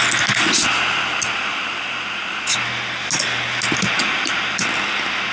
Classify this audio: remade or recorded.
recorded